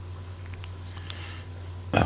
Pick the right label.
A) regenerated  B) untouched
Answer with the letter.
B